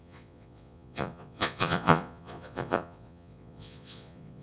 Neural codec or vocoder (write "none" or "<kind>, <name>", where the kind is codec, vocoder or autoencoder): vocoder, Vocos